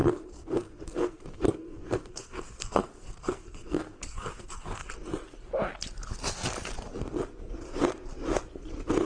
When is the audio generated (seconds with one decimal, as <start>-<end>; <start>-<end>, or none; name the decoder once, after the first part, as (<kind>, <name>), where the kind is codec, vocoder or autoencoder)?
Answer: 0.0-4.9 (codec, SNAC)